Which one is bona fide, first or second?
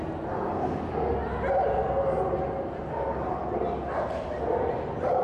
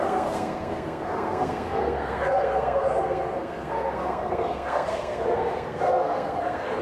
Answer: first